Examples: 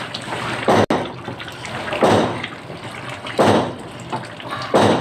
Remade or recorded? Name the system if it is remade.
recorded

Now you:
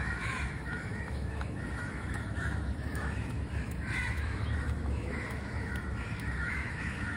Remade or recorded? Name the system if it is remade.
remade, autoencoder, DAC-VAE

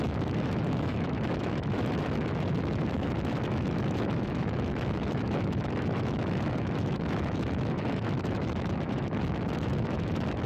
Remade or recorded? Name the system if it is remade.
remade, autoencoder, DAC-VAE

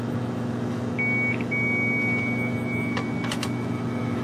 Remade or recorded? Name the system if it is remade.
remade, autoencoder, DAC-VAE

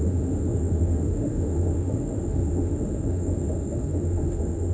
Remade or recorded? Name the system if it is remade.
remade, autoencoder, DAC-VAE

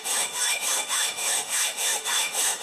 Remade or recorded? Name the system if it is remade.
remade, autoencoder, DAC-VAE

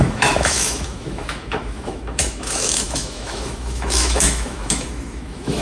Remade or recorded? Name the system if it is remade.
remade, autoencoder, DAC-VAE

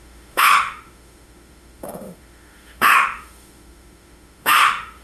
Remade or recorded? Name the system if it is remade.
remade, autoencoder, DAC-VAE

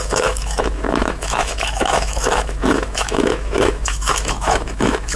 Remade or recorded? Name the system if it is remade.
remade, autoencoder, DAC-VAE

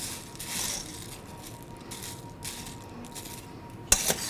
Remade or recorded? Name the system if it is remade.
recorded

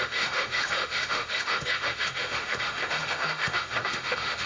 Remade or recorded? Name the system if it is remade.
remade, autoencoder, DAC-VAE